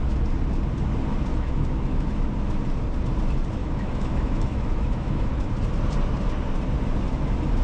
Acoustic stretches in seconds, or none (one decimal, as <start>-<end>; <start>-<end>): 0.0-1.3; 2.1-3.6; 5.3-7.6